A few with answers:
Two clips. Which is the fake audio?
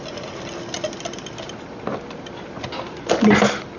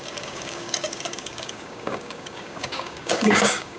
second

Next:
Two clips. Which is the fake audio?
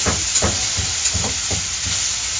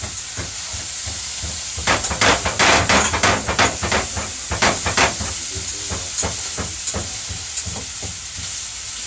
first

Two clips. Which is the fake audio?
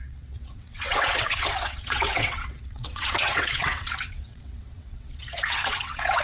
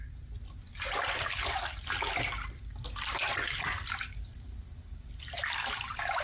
first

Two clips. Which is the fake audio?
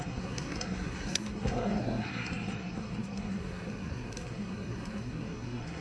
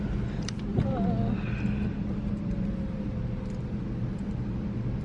first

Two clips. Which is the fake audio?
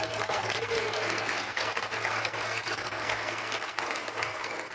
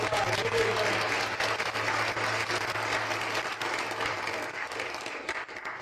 first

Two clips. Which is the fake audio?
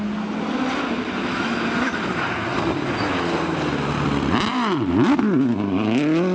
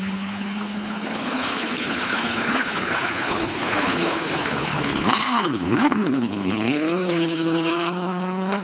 second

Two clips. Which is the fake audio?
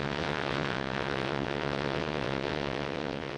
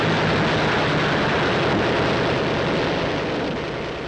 first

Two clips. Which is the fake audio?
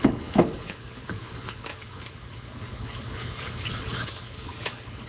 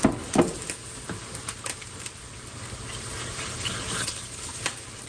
first